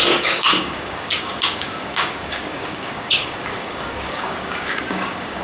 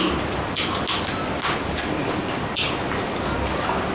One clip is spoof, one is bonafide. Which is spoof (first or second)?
first